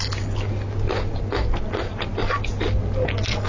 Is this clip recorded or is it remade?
recorded